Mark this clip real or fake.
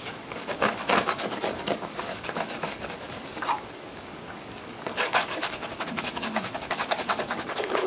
fake